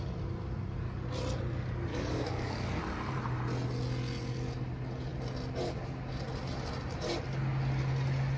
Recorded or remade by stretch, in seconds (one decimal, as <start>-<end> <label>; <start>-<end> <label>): 0.0-1.9 recorded; 1.9-2.8 remade; 2.8-8.4 recorded